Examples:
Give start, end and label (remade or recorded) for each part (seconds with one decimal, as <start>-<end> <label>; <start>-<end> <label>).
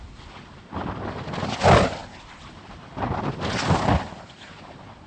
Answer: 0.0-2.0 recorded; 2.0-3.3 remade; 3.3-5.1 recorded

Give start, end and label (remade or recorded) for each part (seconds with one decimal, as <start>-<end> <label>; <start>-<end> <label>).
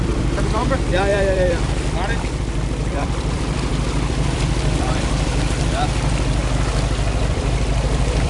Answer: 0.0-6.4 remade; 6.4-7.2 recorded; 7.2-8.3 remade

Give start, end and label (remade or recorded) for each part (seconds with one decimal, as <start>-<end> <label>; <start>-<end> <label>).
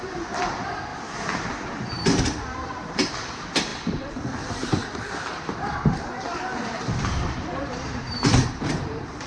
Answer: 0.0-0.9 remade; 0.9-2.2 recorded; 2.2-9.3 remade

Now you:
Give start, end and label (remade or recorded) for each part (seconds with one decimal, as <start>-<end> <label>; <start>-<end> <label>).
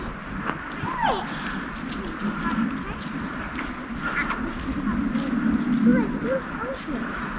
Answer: 0.0-7.4 recorded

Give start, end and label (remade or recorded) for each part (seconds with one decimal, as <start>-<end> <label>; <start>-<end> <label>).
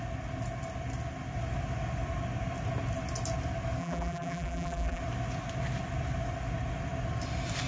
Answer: 0.0-3.8 recorded; 3.8-5.0 remade; 5.0-7.7 recorded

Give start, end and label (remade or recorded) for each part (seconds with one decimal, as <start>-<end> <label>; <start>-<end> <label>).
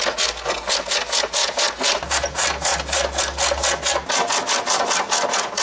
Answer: 0.0-5.6 recorded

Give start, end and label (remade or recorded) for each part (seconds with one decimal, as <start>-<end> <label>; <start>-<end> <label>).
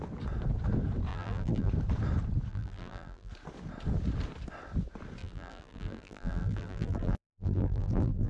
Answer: 0.0-1.1 recorded; 1.1-1.7 remade; 1.7-2.5 recorded; 2.5-3.3 remade; 3.3-5.2 recorded; 5.2-8.3 remade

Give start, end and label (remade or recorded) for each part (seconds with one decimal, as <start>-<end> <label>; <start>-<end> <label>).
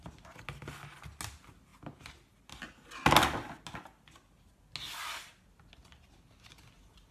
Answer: 0.0-7.1 recorded